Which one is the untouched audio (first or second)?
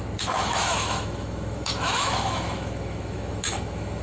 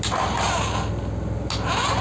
second